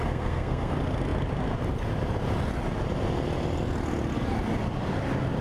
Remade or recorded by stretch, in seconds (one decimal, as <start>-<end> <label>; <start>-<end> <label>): 0.0-0.7 remade; 0.7-5.4 recorded